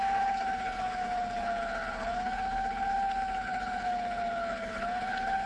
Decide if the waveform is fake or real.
fake